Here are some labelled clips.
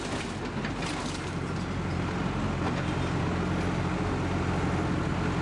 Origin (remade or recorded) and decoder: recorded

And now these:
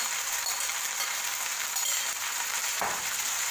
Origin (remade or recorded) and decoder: remade, vocoder, BigVGAN v2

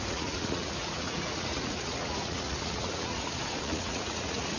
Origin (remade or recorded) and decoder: remade, vocoder, Vocos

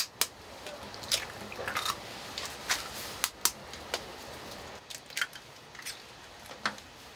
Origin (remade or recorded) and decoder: recorded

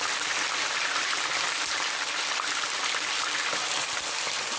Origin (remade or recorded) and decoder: recorded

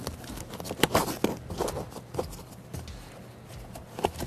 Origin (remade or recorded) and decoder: recorded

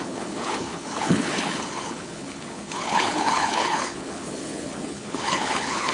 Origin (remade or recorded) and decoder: remade, codec, HILCodec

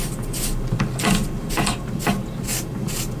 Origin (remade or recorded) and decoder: recorded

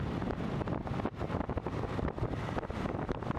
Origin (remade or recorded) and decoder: recorded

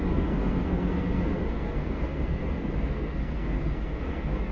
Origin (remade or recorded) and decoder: remade, codec, SNAC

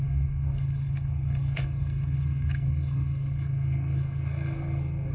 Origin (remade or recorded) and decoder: remade, codec, SNAC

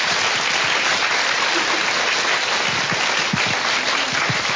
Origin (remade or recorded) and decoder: recorded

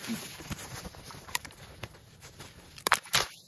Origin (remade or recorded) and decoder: remade, vocoder, BigVGAN v2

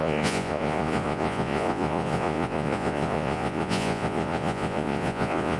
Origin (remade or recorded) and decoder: remade, vocoder, Vocos